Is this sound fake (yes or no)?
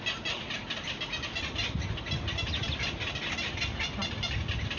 no